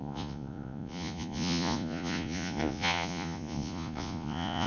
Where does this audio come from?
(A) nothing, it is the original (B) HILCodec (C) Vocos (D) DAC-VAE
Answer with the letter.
C